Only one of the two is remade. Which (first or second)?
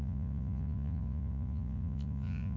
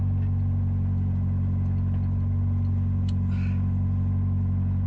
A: first